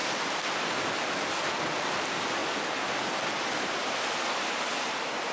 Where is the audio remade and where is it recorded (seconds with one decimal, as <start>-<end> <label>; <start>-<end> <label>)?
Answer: 0.0-5.3 recorded